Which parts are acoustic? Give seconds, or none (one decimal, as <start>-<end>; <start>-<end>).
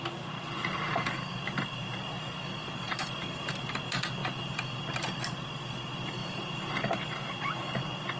0.0-3.0; 3.8-6.2; 6.7-8.2